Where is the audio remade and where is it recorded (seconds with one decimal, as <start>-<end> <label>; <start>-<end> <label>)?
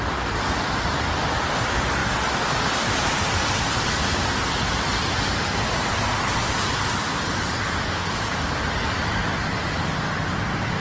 0.0-2.0 recorded; 2.0-7.2 remade; 7.2-8.0 recorded; 8.0-9.8 remade; 9.8-10.8 recorded